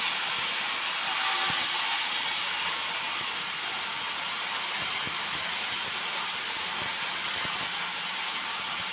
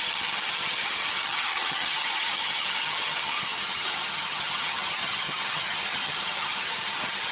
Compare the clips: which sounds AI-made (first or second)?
second